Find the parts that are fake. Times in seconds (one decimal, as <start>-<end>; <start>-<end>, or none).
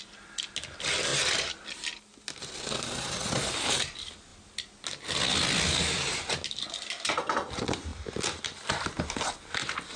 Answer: none